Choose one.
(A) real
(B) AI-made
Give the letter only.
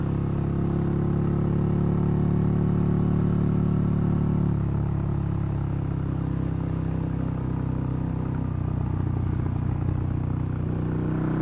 A